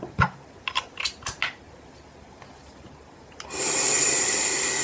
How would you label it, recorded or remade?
recorded